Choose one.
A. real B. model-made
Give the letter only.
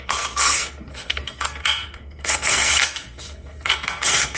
B